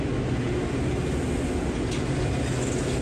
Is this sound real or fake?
real